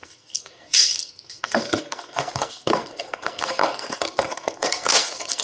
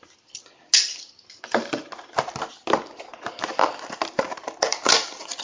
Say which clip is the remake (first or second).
first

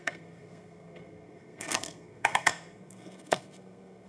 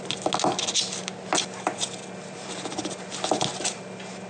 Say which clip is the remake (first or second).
first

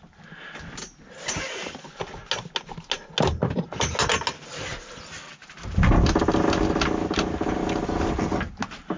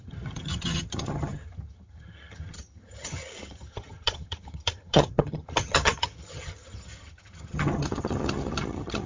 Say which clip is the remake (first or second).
second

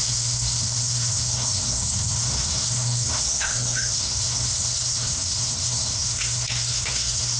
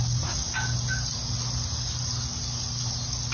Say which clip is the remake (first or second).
first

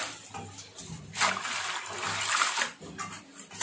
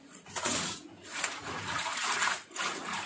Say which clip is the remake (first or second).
second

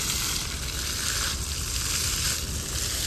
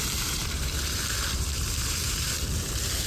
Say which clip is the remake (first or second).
second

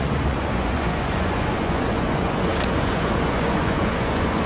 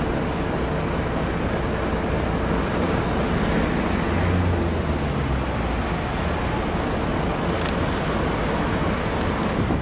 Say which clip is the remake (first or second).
first